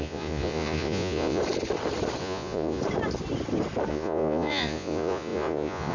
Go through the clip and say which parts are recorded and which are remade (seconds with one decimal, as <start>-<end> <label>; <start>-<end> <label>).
0.0-1.4 remade; 1.4-2.2 recorded; 2.2-2.8 remade; 2.8-3.9 recorded; 3.9-5.9 remade